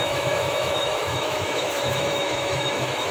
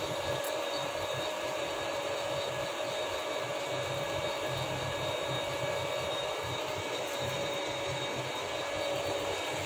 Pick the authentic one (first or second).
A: second